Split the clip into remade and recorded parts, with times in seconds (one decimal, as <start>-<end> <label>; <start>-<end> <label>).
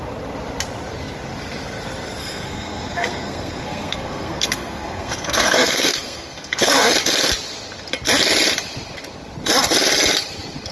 0.0-2.2 recorded; 2.2-6.9 remade; 6.9-10.7 recorded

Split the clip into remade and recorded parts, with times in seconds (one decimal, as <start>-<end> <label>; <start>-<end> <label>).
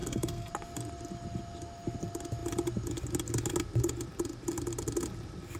0.0-0.5 remade; 0.5-5.6 recorded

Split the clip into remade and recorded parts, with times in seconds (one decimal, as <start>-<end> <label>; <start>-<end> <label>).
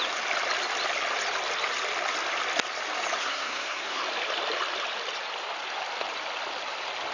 0.0-3.2 recorded; 3.2-4.0 remade; 4.0-7.1 recorded